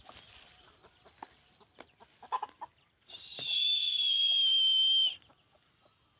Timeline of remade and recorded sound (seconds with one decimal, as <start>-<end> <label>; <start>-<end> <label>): 0.0-6.2 recorded